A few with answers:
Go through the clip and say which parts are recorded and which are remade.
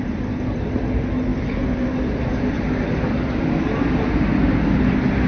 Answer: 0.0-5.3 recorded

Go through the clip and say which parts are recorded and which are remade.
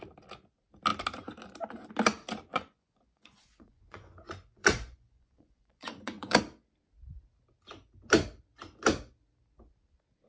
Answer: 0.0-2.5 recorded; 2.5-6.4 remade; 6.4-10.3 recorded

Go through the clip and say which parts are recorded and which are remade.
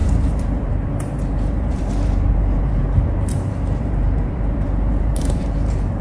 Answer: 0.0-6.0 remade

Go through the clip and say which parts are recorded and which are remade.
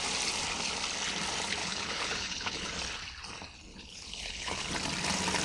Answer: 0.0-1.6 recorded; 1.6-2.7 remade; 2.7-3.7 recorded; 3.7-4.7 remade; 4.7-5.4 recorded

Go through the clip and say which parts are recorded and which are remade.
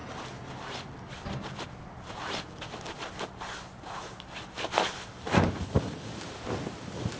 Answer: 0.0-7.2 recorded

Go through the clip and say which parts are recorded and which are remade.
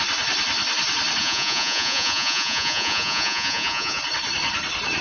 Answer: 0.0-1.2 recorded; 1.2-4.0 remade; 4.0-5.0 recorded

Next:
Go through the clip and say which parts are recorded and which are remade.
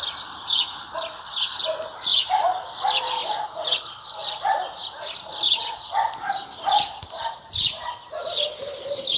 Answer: 0.0-9.2 recorded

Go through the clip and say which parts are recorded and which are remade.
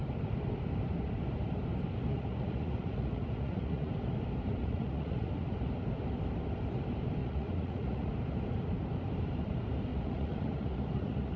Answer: 0.0-2.1 recorded; 2.1-3.9 remade; 3.9-4.6 recorded; 4.6-5.3 remade; 5.3-7.2 recorded; 7.2-8.1 remade; 8.1-9.9 recorded; 9.9-11.4 remade